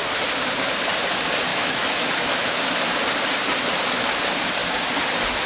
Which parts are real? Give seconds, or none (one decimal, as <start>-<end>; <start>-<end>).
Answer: 0.0-1.5; 2.7-5.5